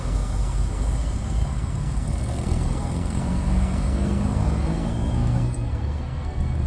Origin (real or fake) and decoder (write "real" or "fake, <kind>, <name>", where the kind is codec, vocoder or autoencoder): fake, codec, SNAC